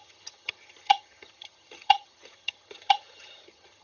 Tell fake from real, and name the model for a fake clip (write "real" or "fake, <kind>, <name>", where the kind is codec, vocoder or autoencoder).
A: fake, vocoder, HiFi-GAN